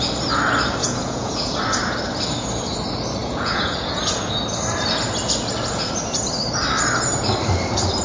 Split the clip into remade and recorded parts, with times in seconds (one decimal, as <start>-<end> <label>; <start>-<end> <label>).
0.0-0.8 recorded; 0.8-1.6 remade; 1.6-3.2 recorded; 3.2-4.3 remade; 4.3-8.0 recorded